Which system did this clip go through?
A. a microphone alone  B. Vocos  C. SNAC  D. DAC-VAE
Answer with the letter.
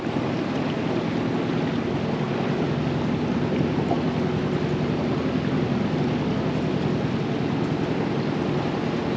A